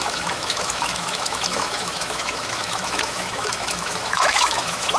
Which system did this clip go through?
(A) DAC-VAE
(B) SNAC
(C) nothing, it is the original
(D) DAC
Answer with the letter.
A